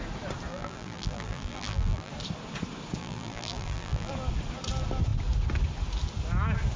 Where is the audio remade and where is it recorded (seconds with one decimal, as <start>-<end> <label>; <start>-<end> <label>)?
0.0-0.5 recorded; 0.5-2.1 remade; 2.1-3.0 recorded; 3.0-4.1 remade; 4.1-6.8 recorded